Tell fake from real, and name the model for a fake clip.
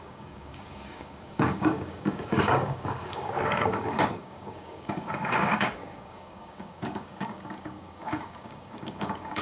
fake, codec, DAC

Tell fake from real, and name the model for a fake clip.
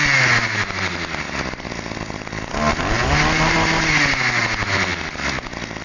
real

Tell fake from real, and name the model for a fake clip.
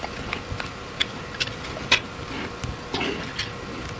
real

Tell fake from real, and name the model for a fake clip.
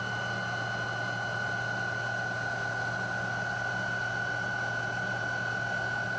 real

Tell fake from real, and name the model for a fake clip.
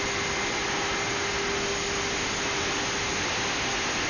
real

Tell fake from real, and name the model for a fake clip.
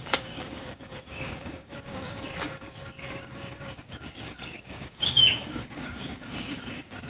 fake, codec, DAC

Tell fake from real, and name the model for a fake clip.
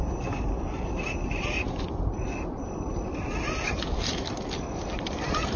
real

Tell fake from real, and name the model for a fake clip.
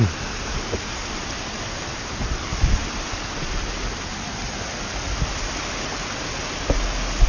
real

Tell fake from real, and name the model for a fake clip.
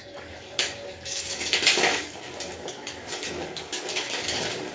fake, codec, DAC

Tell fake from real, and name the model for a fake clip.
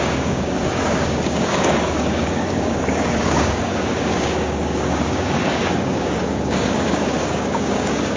fake, codec, DAC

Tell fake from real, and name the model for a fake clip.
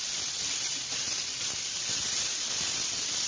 real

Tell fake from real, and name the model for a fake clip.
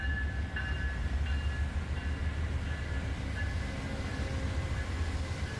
real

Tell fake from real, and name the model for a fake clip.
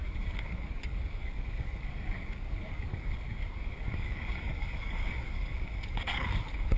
fake, codec, DAC